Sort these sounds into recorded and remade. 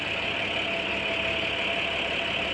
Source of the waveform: recorded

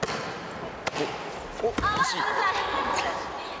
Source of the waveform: recorded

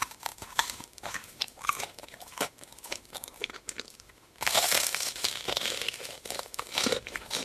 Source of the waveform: remade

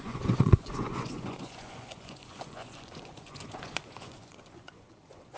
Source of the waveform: remade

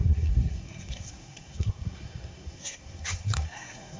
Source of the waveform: remade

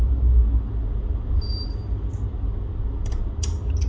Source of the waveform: recorded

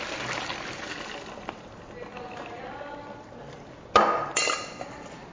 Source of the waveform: recorded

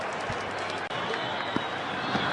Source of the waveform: recorded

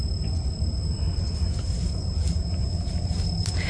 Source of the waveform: recorded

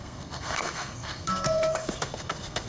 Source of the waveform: remade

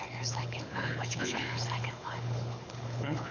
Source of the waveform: remade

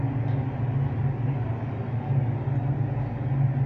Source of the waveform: recorded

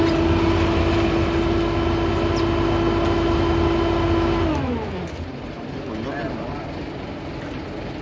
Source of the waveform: recorded